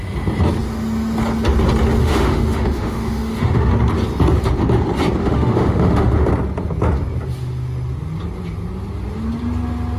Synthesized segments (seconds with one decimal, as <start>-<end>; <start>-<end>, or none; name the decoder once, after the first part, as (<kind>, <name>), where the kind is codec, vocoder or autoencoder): 2.0-3.7 (autoencoder, DAC-VAE); 5.2-6.3